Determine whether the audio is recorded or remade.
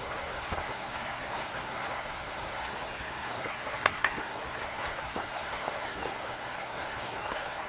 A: remade